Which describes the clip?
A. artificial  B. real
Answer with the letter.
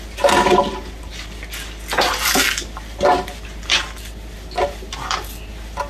B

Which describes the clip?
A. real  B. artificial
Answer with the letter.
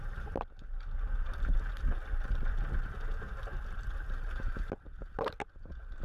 A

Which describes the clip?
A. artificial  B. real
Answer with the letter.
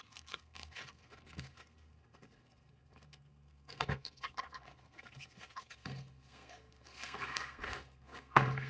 A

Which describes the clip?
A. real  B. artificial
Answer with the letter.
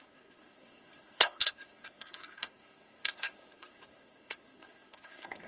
B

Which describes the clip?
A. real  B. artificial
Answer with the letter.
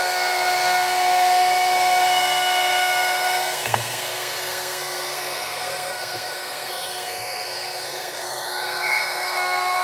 B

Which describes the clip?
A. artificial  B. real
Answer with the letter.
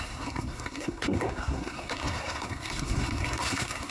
A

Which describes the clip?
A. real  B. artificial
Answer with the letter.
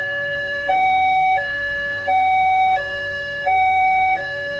B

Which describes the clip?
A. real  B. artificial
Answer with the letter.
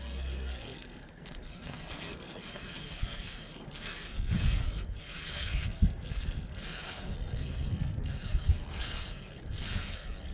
B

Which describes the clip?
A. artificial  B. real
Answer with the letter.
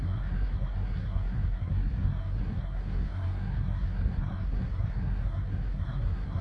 A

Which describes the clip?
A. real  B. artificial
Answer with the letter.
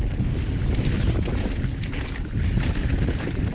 A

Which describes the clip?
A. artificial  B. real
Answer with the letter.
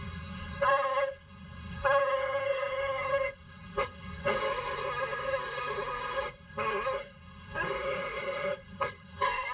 A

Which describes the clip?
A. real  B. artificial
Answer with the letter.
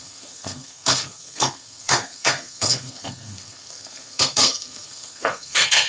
B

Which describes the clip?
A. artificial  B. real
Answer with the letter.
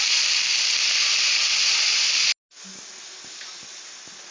B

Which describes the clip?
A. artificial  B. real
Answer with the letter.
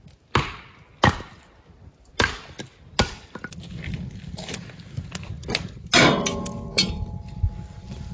B